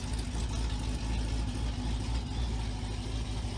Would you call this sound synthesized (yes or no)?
no